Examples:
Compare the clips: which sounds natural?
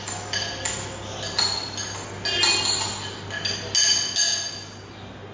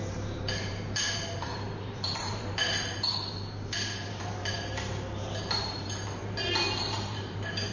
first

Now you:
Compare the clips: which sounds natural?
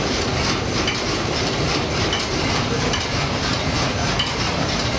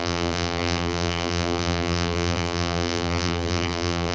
first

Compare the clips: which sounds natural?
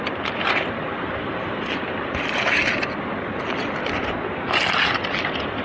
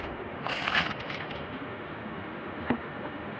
first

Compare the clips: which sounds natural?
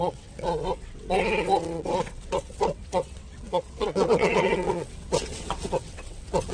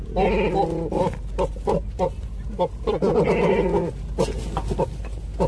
second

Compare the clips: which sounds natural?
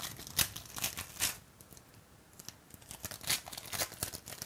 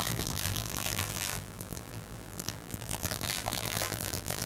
first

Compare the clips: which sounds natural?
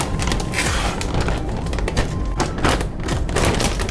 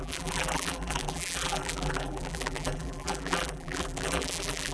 first